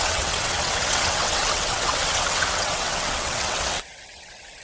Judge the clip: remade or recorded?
remade